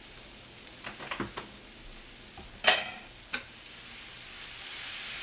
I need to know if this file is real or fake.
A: real